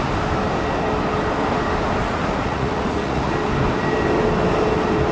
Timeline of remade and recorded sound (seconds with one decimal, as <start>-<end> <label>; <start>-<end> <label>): 0.0-2.0 recorded; 2.0-3.3 remade; 3.3-5.1 recorded